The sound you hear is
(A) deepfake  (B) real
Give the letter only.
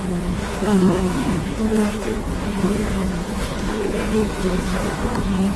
A